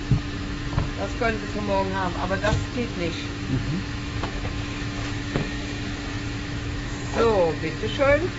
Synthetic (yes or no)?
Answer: yes